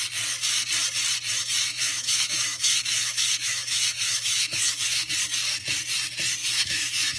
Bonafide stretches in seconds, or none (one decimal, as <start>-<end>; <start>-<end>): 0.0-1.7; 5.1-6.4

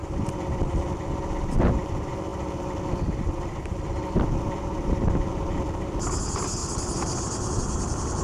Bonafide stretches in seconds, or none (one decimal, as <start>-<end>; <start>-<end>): 0.0-8.2

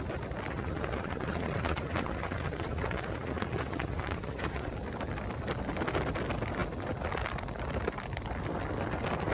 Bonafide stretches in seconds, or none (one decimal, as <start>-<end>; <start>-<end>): 0.0-0.5; 4.7-9.3

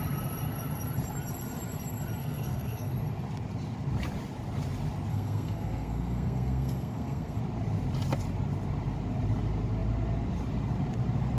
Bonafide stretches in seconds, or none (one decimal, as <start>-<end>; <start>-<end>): 0.0-2.2; 2.9-5.1; 7.4-11.4

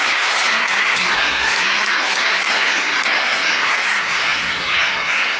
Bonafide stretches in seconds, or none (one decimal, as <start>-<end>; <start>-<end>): none

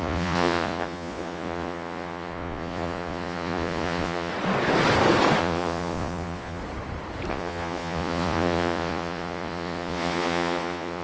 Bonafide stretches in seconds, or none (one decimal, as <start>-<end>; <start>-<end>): 4.3-5.4; 6.6-7.3

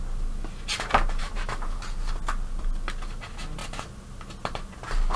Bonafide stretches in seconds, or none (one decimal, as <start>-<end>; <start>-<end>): 0.0-1.2; 1.8-5.2